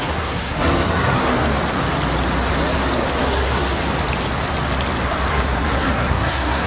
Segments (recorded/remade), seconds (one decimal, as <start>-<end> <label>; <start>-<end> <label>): 0.0-1.2 remade; 1.2-3.2 recorded; 3.2-3.7 remade; 3.7-5.3 recorded; 5.3-6.7 remade